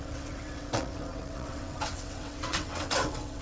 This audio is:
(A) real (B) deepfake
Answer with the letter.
B